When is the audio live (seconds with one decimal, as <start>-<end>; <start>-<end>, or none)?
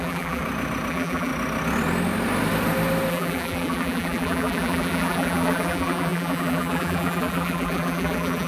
0.4-0.9; 1.3-3.1